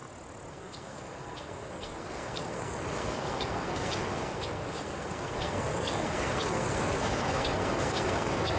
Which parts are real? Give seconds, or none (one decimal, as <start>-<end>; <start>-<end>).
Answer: 0.0-0.5